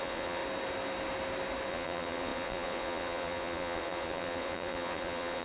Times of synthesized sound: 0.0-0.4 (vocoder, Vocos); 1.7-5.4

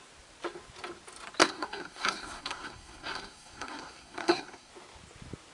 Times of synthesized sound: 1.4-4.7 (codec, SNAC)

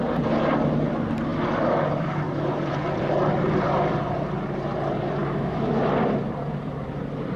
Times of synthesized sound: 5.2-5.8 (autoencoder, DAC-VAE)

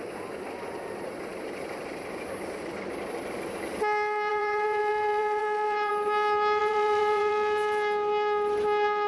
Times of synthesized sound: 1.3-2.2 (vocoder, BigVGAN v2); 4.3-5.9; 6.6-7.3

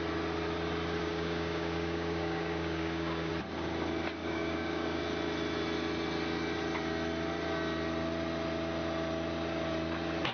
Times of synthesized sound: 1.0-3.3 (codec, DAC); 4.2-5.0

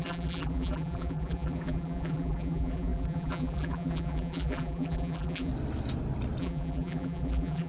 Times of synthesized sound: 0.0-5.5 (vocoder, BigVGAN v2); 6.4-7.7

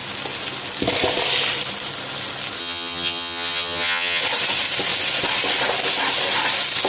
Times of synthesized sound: 2.6-4.2 (vocoder, HiFi-GAN)